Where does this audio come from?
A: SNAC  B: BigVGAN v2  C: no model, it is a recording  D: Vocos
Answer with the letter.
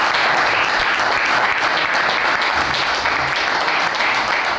C